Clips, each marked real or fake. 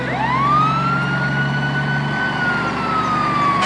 real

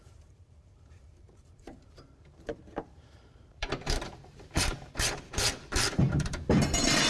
fake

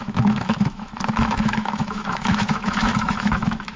fake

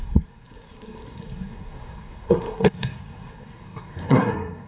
fake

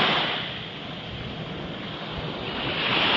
real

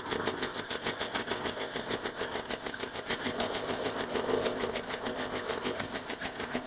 fake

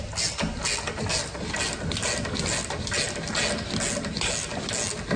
real